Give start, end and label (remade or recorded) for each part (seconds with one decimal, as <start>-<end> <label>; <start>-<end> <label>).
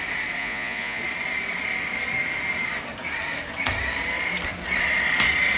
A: 0.0-0.4 recorded; 0.4-1.0 remade; 1.0-5.6 recorded